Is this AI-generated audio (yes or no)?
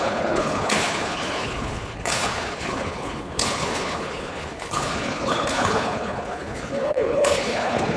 yes